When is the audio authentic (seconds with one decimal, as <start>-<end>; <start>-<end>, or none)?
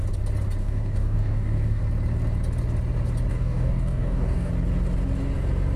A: 0.0-0.6; 1.8-3.3; 4.5-5.8